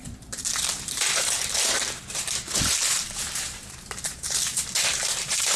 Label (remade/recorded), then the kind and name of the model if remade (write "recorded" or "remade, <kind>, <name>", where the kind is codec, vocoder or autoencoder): remade, vocoder, BigVGAN v2